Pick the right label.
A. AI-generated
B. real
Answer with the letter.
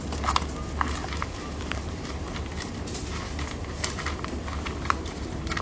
B